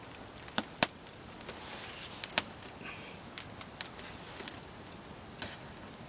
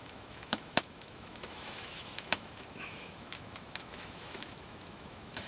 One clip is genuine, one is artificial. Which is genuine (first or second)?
first